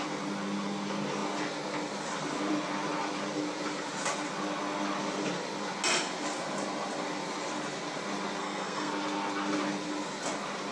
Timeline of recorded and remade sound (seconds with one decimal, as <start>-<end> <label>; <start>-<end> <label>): 0.0-8.4 recorded; 8.4-8.9 remade; 8.9-10.7 recorded